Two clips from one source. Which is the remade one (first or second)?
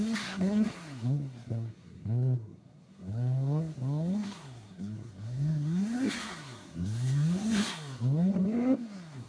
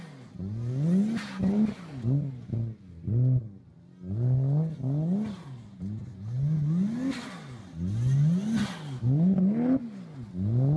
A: first